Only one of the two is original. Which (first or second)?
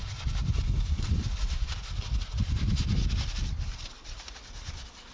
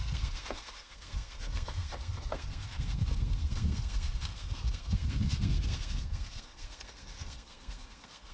first